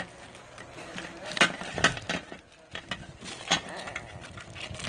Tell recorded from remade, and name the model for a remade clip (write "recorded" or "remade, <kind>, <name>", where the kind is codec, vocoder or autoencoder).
recorded